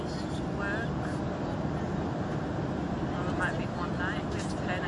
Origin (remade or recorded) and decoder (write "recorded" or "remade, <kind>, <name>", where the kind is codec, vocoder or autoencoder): recorded